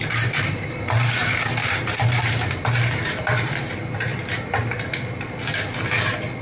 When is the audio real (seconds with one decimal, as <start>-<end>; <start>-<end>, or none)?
4.1-6.4